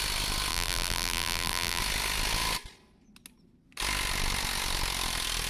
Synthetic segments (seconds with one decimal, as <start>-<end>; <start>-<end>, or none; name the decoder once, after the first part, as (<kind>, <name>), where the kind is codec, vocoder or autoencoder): 0.5-1.8 (vocoder, BigVGAN v2)